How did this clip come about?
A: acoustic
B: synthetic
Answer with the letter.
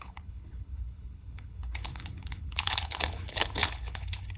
B